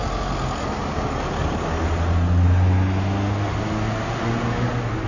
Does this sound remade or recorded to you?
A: recorded